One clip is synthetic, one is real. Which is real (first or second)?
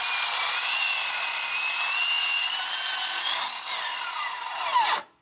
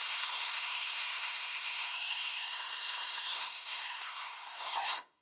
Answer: first